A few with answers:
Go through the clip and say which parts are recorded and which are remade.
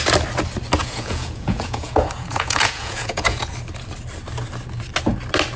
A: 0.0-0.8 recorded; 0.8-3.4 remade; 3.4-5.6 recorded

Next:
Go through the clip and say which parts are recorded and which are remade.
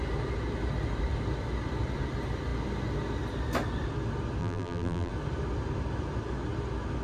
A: 0.0-4.4 recorded; 4.4-5.1 remade; 5.1-7.0 recorded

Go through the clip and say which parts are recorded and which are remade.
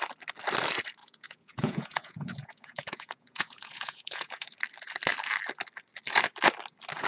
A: 0.0-1.0 recorded; 1.0-4.6 remade; 4.6-7.1 recorded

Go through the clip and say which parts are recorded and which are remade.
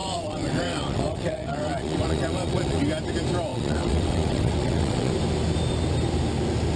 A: 0.0-2.8 remade; 2.8-3.5 recorded; 3.5-5.1 remade; 5.1-6.8 recorded